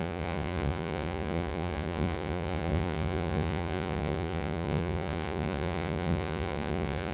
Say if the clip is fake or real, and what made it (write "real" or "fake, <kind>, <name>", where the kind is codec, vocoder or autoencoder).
fake, vocoder, Vocos